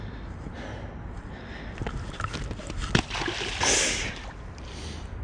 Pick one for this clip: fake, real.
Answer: real